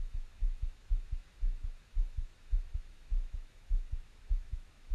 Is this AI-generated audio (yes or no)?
yes